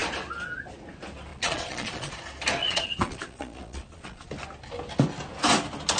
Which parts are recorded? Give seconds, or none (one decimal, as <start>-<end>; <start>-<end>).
0.0-1.3; 2.2-2.6; 4.3-6.0